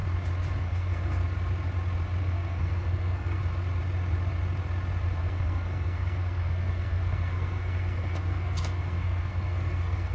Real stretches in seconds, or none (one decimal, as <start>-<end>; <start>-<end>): 0.0-0.6; 1.2-2.2; 3.4-5.2